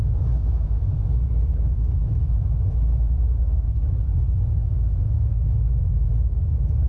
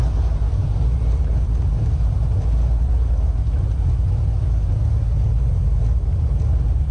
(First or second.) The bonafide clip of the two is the second